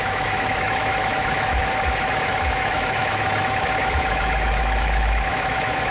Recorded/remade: remade